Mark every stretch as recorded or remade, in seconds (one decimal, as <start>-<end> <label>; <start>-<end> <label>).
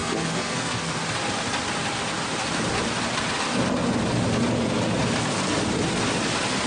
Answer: 0.0-1.0 remade; 1.0-6.7 recorded